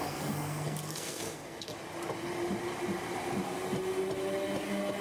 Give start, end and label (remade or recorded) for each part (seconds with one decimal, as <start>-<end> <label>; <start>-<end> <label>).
0.0-1.7 remade; 1.7-5.0 recorded